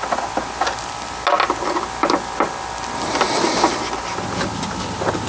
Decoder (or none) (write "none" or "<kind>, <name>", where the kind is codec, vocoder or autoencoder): none